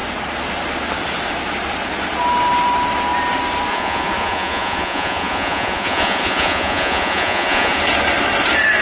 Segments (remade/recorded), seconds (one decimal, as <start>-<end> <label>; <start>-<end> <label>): 0.0-3.7 recorded; 3.7-7.8 remade; 7.8-8.8 recorded